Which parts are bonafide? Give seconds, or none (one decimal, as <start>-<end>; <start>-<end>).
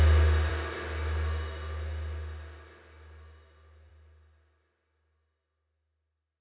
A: 0.0-6.4